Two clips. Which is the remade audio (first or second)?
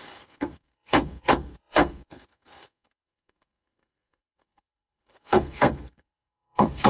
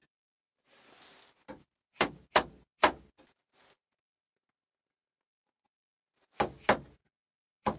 first